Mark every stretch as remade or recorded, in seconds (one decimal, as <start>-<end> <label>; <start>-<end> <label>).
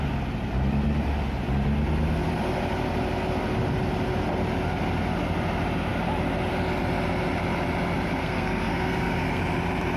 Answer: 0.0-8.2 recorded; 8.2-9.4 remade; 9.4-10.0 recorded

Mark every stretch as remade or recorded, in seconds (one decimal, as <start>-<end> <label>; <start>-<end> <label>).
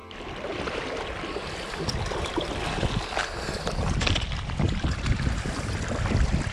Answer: 0.0-6.5 recorded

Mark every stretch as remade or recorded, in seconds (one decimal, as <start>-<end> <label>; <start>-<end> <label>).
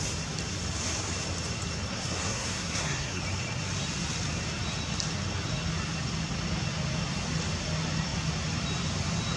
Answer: 0.0-1.9 recorded; 1.9-3.2 remade; 3.2-9.4 recorded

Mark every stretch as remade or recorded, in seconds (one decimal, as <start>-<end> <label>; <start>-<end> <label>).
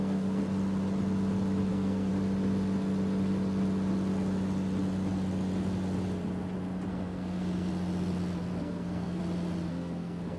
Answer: 0.0-0.4 remade; 0.4-1.7 recorded; 1.7-2.1 remade; 2.1-6.9 recorded; 6.9-7.7 remade; 7.7-8.6 recorded; 8.6-9.2 remade; 9.2-9.7 recorded; 9.7-10.4 remade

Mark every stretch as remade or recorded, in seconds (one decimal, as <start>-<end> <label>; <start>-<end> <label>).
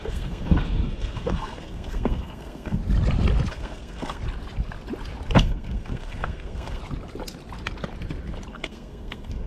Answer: 0.0-2.8 remade; 2.8-3.5 recorded; 3.5-4.2 remade; 4.2-5.4 recorded; 5.4-6.8 remade; 6.8-8.5 recorded; 8.5-9.5 remade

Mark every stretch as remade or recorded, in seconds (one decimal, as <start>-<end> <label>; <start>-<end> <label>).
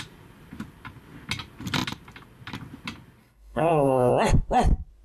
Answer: 0.0-3.2 recorded; 3.2-4.1 remade; 4.1-5.0 recorded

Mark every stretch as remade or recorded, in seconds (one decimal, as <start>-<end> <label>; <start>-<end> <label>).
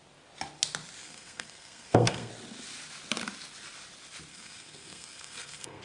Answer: 0.0-1.0 recorded; 1.0-2.3 remade; 2.3-4.3 recorded; 4.3-5.8 remade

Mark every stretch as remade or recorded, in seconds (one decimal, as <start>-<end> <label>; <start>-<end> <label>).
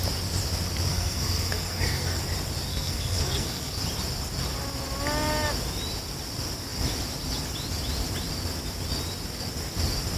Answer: 0.0-0.9 recorded; 0.9-2.2 remade; 2.2-2.7 recorded; 2.7-3.7 remade; 3.7-10.2 recorded